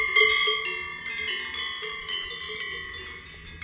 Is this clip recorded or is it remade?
recorded